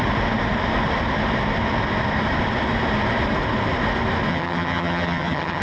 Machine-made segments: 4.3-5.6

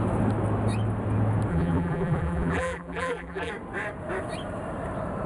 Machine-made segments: 1.5-3.5

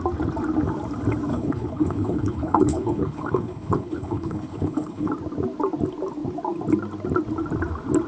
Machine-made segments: 1.3-5.1

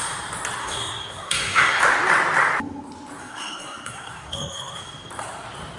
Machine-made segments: 0.6-1.8; 3.2-4.8

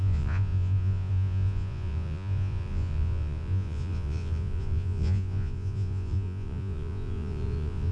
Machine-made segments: 0.0-7.9

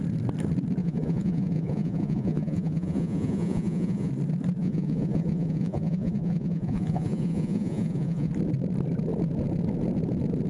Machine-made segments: 0.8-4.1; 4.6-8.3